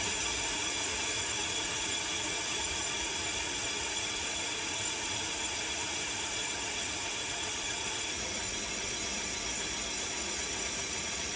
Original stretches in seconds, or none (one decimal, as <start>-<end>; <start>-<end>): 8.4-10.0